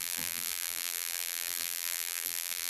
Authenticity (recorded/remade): remade